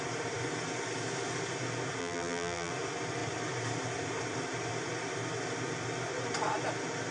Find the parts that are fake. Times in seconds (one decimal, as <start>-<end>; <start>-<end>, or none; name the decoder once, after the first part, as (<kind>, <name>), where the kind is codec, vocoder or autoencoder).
2.0-2.7 (vocoder, BigVGAN v2)